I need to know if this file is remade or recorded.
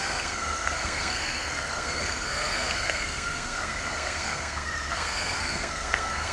remade